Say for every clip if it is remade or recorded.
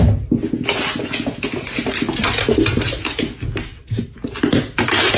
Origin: recorded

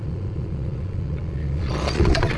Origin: remade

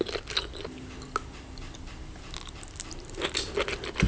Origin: recorded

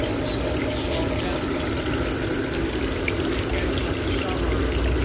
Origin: recorded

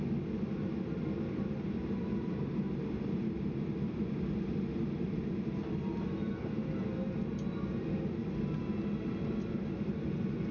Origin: recorded